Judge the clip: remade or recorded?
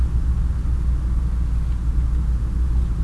recorded